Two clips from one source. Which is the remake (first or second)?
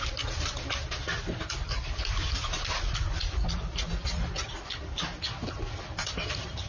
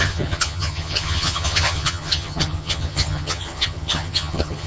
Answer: second